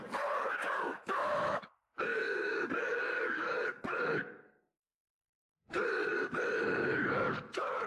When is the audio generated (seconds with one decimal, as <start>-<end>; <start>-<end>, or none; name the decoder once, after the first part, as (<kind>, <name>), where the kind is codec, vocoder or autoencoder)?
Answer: 0.9-1.6 (autoencoder, DAC-VAE); 2.1-2.7